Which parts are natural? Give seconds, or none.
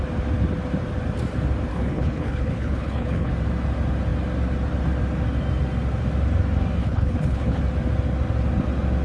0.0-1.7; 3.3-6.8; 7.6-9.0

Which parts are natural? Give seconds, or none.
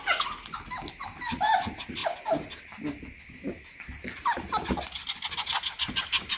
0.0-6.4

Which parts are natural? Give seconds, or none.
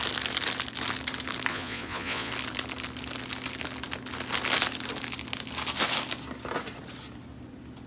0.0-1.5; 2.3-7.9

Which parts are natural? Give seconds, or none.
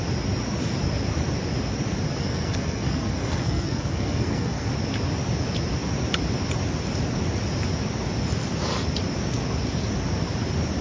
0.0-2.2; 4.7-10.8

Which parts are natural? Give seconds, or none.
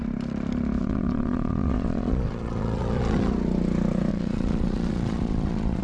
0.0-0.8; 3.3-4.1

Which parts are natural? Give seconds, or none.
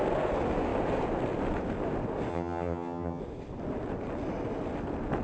0.0-2.3; 3.2-5.2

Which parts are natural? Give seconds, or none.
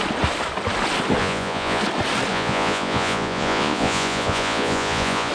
0.0-1.2; 1.8-2.3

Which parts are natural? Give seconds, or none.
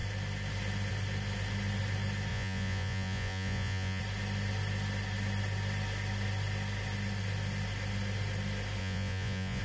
0.0-2.3; 4.0-8.8